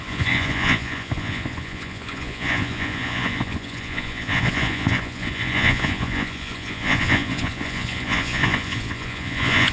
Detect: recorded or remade remade